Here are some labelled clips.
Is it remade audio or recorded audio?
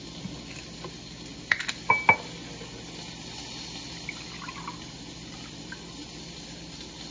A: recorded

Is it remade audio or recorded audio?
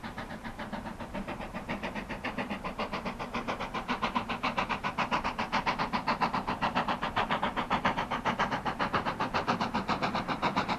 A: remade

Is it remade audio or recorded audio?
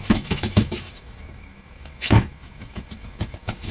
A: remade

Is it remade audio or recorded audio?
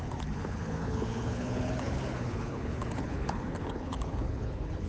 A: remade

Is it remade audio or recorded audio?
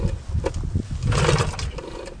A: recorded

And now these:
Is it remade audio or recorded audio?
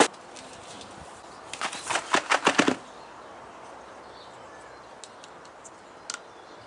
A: recorded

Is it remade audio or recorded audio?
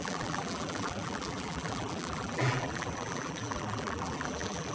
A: remade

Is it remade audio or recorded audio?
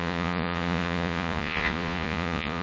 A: remade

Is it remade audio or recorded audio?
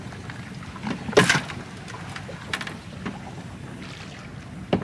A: recorded